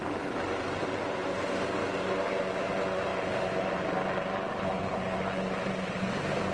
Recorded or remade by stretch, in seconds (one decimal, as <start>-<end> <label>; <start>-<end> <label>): 0.0-6.5 recorded